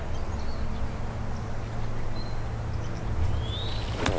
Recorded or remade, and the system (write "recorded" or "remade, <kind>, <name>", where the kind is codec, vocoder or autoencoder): recorded